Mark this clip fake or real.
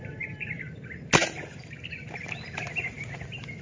real